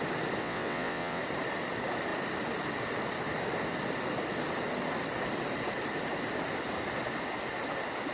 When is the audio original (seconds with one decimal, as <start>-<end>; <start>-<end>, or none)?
0.0-0.4; 1.2-8.1

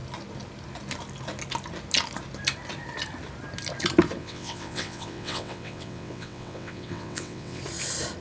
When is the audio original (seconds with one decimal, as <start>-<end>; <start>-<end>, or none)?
0.0-4.2; 7.6-8.2

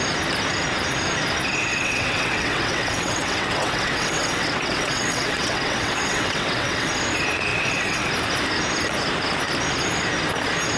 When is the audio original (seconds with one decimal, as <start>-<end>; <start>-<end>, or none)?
0.0-1.7; 6.9-7.5; 8.1-10.8

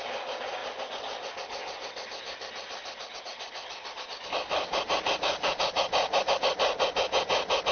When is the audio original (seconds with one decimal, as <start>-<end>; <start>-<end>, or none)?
0.0-7.7